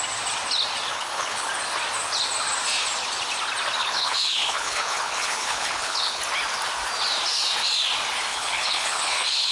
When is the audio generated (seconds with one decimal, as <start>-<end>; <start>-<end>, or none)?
0.9-1.5; 3.8-6.2; 8.3-9.5